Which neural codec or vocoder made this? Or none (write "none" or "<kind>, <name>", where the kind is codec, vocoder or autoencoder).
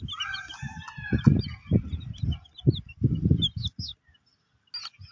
none